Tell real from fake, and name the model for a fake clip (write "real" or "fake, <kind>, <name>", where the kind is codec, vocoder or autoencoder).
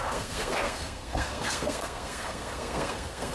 fake, codec, SNAC